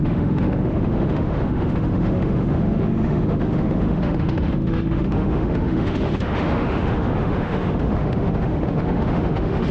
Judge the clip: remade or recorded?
remade